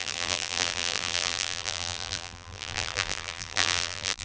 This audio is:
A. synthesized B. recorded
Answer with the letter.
A